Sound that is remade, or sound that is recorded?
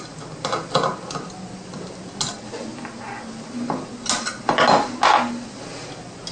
recorded